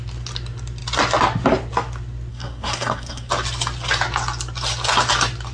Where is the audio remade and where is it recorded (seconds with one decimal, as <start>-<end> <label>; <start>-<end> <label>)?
0.0-2.3 recorded; 2.3-3.3 remade; 3.3-5.5 recorded